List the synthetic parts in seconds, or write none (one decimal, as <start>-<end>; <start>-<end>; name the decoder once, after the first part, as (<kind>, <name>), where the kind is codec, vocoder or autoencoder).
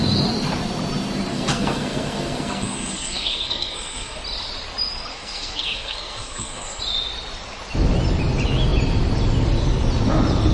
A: 1.3-4.2 (codec, SNAC); 5.1-6.8